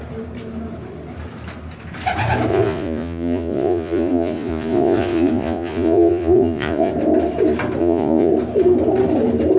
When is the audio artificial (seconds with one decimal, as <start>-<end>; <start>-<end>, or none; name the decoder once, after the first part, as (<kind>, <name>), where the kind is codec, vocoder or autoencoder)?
2.5-6.9 (vocoder, Vocos); 7.8-8.3